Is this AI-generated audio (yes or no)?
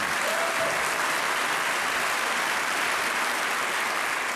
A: no